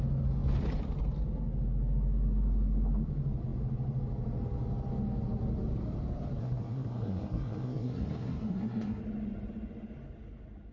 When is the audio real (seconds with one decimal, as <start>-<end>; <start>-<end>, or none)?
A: 0.0-6.4; 9.0-10.7